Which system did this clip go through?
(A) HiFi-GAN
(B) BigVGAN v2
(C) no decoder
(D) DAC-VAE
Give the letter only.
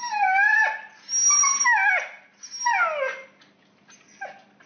C